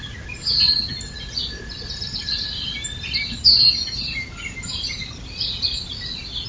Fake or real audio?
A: real